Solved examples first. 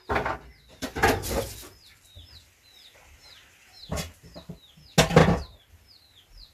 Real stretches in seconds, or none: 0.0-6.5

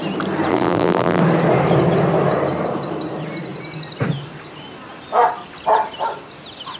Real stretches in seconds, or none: 0.0-0.5; 1.2-6.8

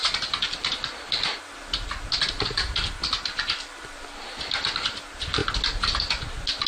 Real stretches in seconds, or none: 0.0-2.9; 5.4-6.7

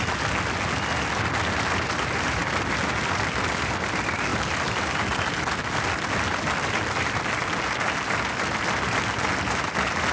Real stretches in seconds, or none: 0.0-4.3; 4.9-10.1